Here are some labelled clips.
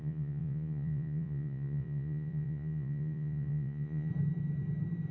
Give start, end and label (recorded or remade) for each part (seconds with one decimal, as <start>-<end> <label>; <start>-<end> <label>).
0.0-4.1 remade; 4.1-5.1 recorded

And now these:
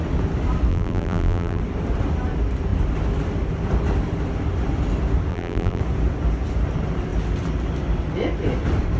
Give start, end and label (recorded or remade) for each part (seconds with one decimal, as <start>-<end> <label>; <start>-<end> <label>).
0.0-0.7 recorded; 0.7-1.6 remade; 1.6-5.3 recorded; 5.3-5.8 remade; 5.8-9.0 recorded

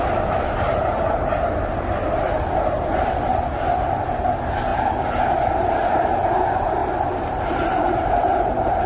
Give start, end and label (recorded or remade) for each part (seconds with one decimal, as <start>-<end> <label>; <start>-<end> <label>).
0.0-4.7 recorded; 4.7-5.2 remade; 5.2-6.8 recorded; 6.8-8.9 remade